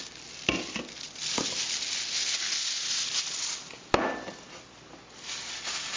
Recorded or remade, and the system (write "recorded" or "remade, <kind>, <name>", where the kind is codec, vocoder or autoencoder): recorded